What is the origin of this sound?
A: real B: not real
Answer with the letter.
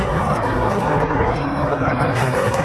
B